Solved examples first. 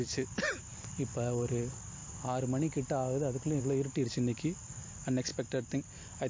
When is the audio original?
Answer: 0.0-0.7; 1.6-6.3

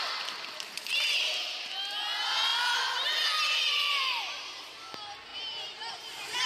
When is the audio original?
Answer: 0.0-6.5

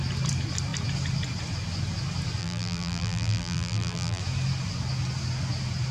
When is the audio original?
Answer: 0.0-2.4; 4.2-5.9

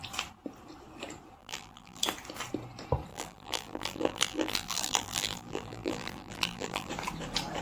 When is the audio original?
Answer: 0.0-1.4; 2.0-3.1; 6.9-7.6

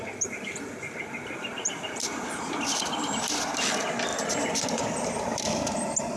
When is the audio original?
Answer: 4.1-4.8